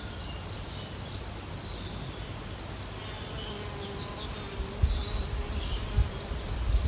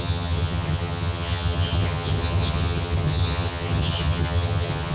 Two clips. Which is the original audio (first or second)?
first